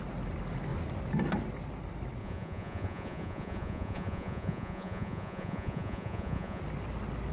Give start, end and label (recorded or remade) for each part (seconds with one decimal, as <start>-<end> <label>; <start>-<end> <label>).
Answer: 0.0-2.2 recorded; 2.2-6.6 remade; 6.6-7.3 recorded